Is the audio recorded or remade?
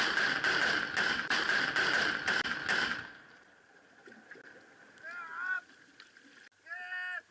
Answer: recorded